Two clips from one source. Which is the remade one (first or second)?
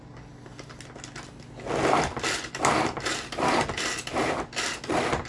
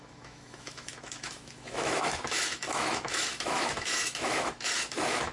second